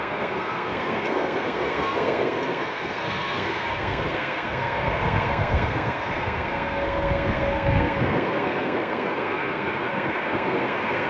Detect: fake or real fake